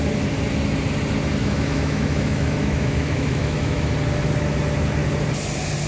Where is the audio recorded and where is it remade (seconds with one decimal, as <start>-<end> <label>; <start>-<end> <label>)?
0.0-1.4 recorded; 1.4-3.9 remade; 3.9-5.9 recorded